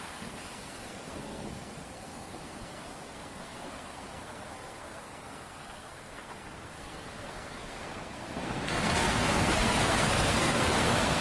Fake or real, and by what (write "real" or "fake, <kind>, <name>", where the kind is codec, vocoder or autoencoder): fake, codec, SNAC